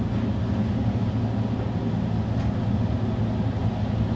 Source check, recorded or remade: recorded